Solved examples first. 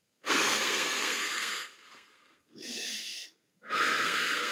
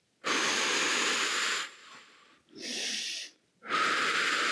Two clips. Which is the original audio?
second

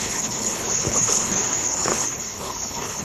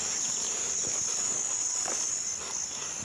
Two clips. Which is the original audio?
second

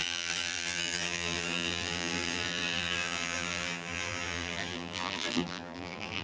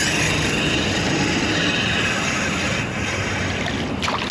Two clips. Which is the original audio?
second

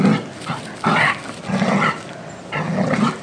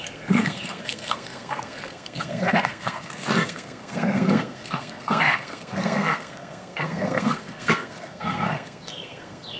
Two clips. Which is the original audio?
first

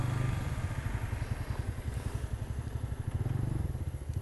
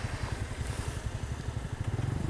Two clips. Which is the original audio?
first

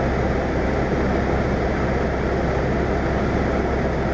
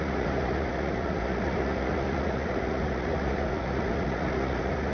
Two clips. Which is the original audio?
first